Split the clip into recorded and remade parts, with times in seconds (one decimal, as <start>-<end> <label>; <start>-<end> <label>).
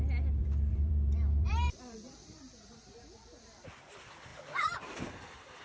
0.0-0.4 recorded; 0.4-3.8 remade; 3.8-5.6 recorded